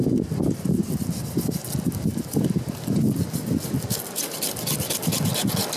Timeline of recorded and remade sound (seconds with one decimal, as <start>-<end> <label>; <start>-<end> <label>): 0.0-5.8 recorded